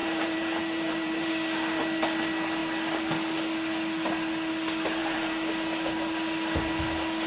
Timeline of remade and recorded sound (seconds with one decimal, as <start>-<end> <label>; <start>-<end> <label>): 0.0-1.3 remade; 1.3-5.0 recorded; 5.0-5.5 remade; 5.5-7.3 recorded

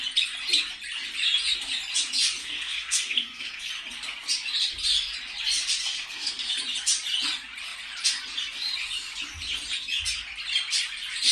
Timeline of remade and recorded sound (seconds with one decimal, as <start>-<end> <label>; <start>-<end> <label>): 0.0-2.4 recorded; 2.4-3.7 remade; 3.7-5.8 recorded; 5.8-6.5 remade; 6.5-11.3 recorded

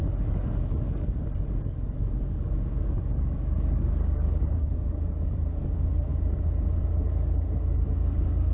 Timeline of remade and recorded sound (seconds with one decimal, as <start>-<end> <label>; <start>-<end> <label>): 0.0-6.1 remade; 6.1-6.9 recorded; 6.9-8.5 remade

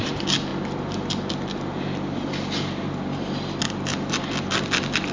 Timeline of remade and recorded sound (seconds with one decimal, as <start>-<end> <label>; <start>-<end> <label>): 0.0-5.1 recorded

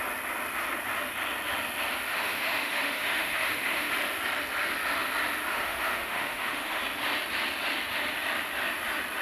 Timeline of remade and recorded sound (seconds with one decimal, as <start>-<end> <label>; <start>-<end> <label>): 0.0-2.1 recorded; 2.1-3.9 remade; 3.9-5.5 recorded; 5.5-6.8 remade; 6.8-9.2 recorded

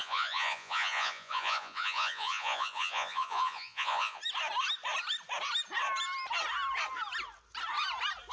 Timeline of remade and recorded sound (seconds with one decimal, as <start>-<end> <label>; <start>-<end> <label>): 0.0-4.2 remade; 4.2-8.3 recorded